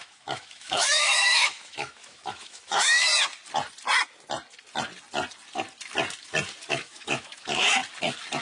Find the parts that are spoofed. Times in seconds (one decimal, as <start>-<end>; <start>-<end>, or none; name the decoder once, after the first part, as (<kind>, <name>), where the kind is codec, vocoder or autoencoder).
0.0-3.1 (autoencoder, DAC-VAE); 6.7-7.8